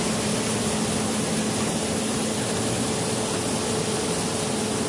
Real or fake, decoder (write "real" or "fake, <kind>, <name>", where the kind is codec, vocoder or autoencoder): real